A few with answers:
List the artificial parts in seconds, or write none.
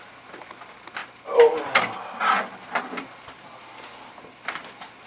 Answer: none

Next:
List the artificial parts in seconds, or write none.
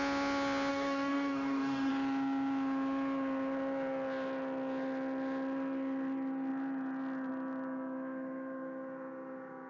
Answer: 0.7-1.9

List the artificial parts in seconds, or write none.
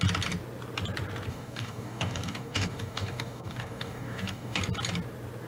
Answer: 1.3-4.6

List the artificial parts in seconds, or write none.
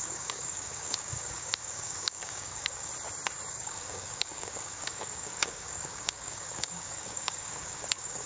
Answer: 0.0-2.9; 3.5-8.3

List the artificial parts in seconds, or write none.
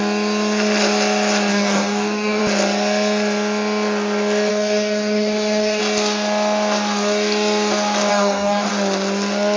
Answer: 1.5-2.4; 4.5-5.8; 8.1-8.7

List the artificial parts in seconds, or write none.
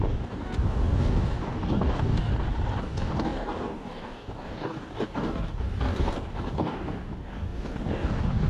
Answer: 0.0-2.3; 2.8-8.5